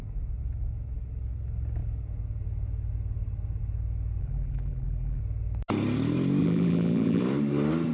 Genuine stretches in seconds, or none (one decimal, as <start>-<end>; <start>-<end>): 0.0-4.2; 5.2-6.4; 7.2-7.9